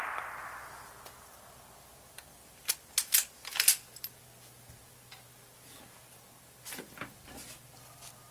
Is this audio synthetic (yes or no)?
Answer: no